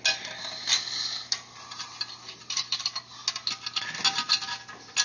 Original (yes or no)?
yes